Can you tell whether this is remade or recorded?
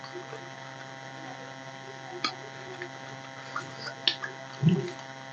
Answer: recorded